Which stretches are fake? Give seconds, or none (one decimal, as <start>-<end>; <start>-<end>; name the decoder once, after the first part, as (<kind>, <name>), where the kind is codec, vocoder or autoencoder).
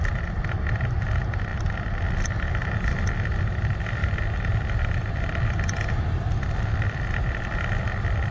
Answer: 4.0-8.3 (vocoder, BigVGAN v2)